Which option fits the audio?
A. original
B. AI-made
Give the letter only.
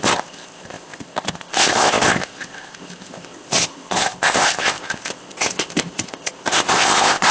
B